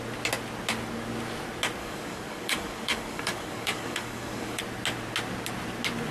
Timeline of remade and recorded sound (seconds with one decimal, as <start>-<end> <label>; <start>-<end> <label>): 0.0-1.8 recorded; 1.8-4.6 remade; 4.6-6.1 recorded